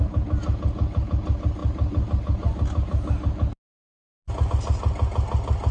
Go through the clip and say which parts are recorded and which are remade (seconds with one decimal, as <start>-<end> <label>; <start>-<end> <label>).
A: 0.0-5.7 recorded